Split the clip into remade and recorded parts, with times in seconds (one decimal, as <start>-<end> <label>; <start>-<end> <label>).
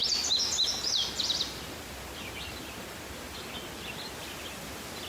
0.0-5.1 recorded